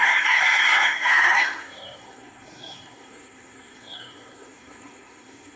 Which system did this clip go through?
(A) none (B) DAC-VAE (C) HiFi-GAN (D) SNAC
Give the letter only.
D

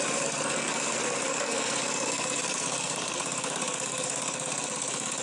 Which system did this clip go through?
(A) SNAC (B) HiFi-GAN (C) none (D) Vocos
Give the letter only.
A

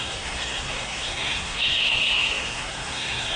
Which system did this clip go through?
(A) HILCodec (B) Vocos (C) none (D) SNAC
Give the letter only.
D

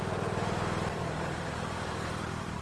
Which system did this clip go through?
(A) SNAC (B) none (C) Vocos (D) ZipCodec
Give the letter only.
B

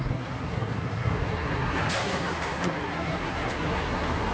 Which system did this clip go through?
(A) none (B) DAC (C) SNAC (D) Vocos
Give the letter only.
C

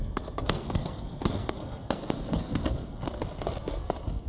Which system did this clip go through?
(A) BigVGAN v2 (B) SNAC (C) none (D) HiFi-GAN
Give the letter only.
B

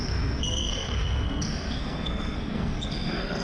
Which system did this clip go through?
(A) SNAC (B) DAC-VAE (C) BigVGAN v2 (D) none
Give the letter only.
A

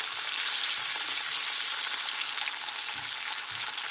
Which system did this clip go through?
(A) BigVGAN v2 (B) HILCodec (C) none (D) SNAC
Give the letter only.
C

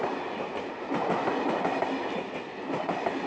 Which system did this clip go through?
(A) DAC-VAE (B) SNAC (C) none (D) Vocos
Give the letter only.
C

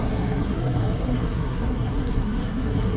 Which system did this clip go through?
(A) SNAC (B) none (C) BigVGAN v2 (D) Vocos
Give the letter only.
A